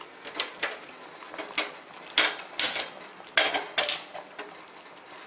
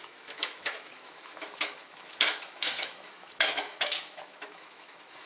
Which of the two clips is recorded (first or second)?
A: first